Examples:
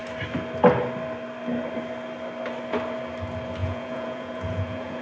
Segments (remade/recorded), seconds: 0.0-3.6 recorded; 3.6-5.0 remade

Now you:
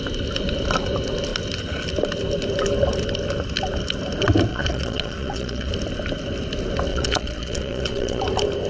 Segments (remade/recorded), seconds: 0.0-4.5 recorded; 4.5-5.7 remade; 5.7-6.9 recorded; 6.9-8.2 remade; 8.2-8.7 recorded

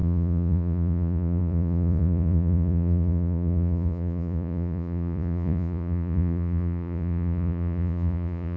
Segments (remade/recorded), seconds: 0.0-8.6 remade

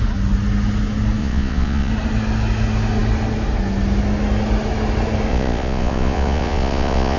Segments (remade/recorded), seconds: 0.0-1.2 recorded; 1.2-1.9 remade; 1.9-5.3 recorded; 5.3-7.2 remade

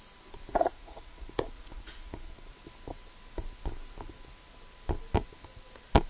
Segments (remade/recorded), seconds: 0.0-0.5 recorded; 0.5-2.5 remade; 2.5-6.1 recorded

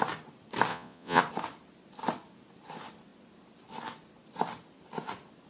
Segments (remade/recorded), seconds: 0.0-0.7 recorded; 0.7-1.2 remade; 1.2-5.5 recorded

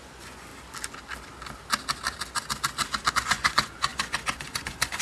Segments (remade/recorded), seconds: 0.0-0.5 remade; 0.5-3.1 recorded; 3.1-5.0 remade